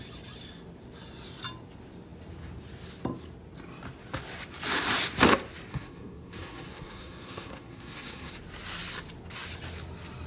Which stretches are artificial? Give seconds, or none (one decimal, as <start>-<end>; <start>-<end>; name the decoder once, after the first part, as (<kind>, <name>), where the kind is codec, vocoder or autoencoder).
5.7-8.3 (codec, SNAC)